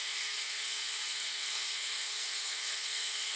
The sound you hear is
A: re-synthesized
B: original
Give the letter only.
A